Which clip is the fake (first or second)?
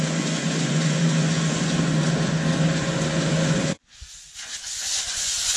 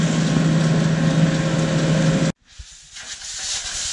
first